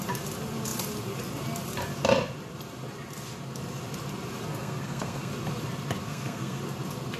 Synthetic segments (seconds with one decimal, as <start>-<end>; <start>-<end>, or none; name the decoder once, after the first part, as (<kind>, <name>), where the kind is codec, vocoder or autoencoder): 4.5-5.3 (codec, SNAC); 6.0-6.6